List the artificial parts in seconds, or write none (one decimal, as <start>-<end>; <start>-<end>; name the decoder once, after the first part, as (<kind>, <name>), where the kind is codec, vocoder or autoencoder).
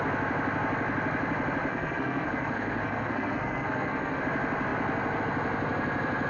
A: 1.7-4.2 (codec, SNAC)